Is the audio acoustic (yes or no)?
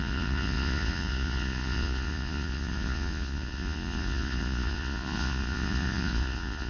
no